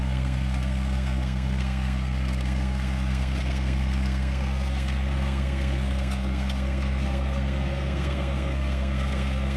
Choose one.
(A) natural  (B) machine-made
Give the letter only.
B